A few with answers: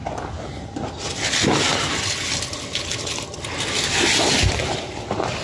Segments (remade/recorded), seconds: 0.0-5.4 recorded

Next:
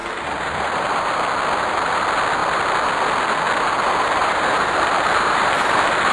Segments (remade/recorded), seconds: 0.0-1.1 remade; 1.1-4.2 recorded; 4.2-6.1 remade

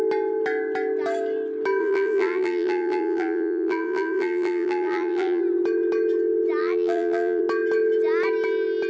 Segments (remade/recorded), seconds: 0.0-1.8 recorded; 1.8-5.4 remade; 5.4-6.6 recorded; 6.6-7.4 remade; 7.4-8.9 recorded